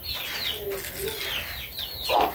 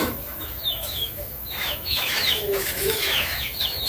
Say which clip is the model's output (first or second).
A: second